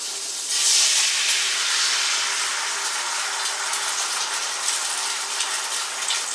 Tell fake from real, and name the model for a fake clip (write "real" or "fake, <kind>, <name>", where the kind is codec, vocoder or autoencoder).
real